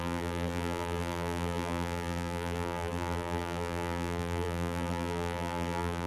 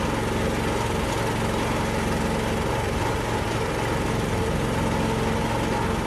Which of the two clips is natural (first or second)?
second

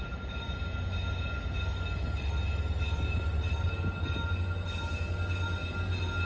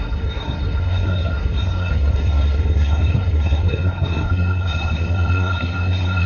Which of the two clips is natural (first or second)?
first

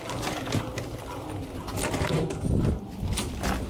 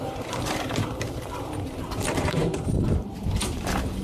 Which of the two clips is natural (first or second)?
first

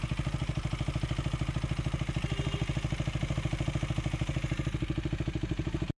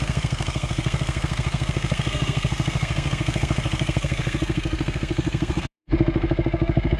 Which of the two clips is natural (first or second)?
first